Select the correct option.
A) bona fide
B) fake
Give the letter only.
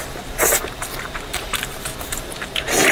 B